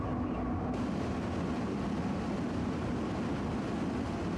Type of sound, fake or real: real